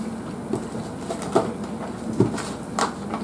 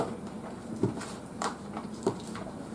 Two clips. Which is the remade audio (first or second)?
second